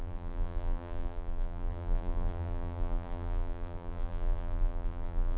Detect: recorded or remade remade